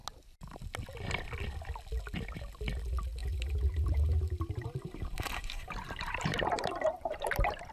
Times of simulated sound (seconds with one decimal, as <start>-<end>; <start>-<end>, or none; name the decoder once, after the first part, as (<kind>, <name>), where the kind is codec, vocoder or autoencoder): 3.2-7.7 (vocoder, BigVGAN v2)